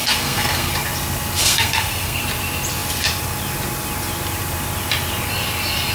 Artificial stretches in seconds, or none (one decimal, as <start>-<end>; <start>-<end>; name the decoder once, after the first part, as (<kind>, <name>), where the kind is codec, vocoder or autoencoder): 0.0-0.7 (codec, SNAC); 1.4-2.2